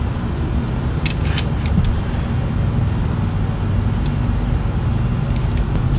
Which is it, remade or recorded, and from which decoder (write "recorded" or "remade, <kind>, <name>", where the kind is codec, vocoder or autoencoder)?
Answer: recorded